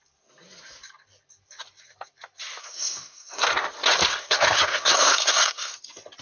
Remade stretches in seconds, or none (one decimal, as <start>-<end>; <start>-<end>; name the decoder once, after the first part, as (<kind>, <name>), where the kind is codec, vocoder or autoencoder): 2.6-3.5 (codec, SNAC); 4.1-5.8